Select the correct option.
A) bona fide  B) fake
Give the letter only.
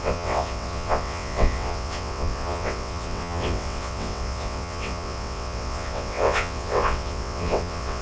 B